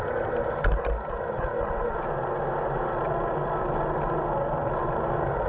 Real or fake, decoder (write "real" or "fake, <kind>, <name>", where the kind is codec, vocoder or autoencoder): real